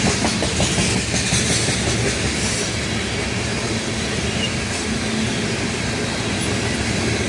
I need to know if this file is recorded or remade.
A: recorded